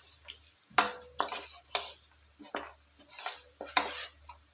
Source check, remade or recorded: recorded